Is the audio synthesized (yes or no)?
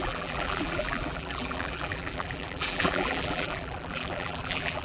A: yes